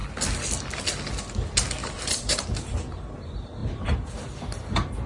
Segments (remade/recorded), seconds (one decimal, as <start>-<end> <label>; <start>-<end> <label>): 0.0-1.8 recorded; 1.8-3.2 remade; 3.2-3.6 recorded; 3.6-4.1 remade; 4.1-5.1 recorded